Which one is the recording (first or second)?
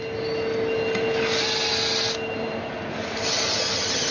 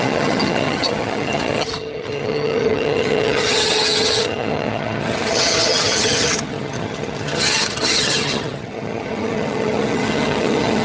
first